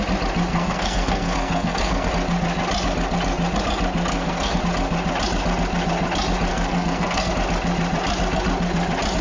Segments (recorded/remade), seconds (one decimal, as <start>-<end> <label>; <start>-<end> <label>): 0.0-0.5 recorded; 0.5-2.1 remade; 2.1-4.1 recorded; 4.1-4.6 remade; 4.6-6.5 recorded; 6.5-7.3 remade; 7.3-9.2 recorded